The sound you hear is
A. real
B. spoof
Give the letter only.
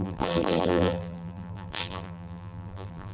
B